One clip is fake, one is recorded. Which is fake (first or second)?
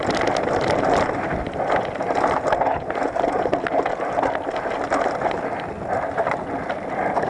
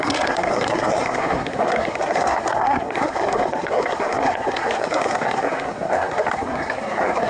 second